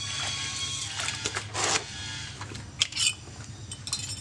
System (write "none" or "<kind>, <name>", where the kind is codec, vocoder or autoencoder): none